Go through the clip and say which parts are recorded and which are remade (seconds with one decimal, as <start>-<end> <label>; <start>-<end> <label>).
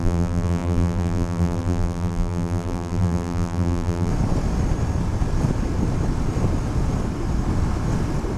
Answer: 0.0-4.1 remade; 4.1-8.4 recorded